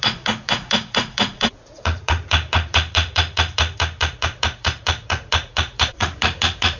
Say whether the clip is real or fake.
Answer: fake